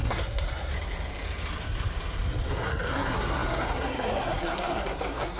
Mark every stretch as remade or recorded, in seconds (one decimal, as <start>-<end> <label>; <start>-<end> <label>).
0.0-0.7 remade; 0.7-2.5 recorded; 2.5-5.4 remade